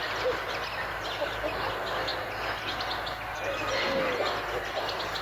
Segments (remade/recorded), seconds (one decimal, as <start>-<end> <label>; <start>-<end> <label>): 0.0-5.2 recorded